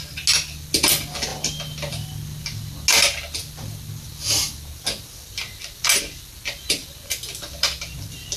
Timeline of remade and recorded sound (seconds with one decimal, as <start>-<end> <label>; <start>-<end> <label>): 0.0-8.4 recorded